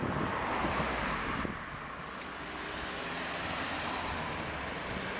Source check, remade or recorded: recorded